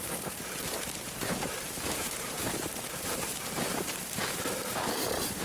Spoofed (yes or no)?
yes